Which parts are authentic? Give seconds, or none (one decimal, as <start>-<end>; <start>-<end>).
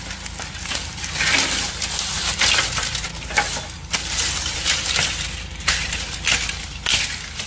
0.0-4.0; 5.7-7.5